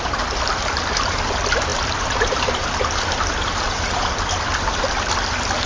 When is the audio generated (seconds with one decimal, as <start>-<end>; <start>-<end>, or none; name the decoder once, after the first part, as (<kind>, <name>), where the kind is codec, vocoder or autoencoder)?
1.7-5.1 (vocoder, BigVGAN v2)